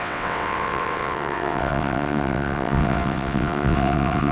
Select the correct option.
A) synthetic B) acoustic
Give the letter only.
A